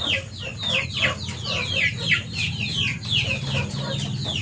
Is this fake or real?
real